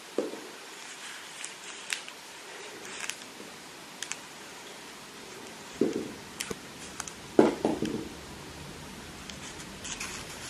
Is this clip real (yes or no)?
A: yes